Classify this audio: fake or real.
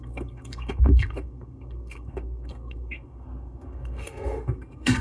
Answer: fake